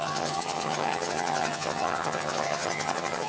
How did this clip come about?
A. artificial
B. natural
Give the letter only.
A